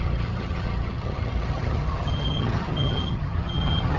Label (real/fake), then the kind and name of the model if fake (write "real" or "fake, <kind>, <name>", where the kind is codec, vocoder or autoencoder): fake, vocoder, HiFi-GAN